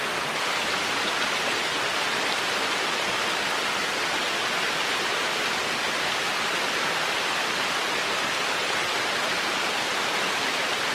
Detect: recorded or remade recorded